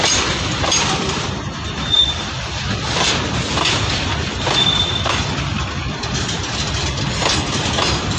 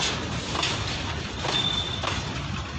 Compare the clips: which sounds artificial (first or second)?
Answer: first